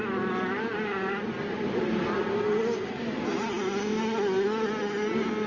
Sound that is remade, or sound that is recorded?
recorded